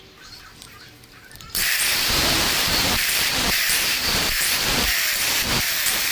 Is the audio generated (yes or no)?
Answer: yes